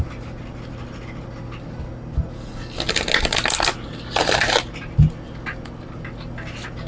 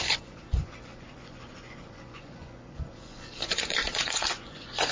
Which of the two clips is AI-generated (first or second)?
second